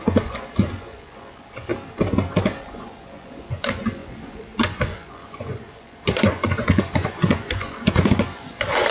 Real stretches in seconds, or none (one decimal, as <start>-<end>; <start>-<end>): 1.7-2.6